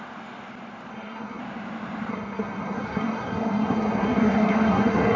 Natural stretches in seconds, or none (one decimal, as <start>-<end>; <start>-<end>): 0.0-0.9; 1.4-2.1